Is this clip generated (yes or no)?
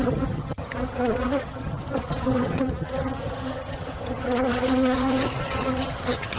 yes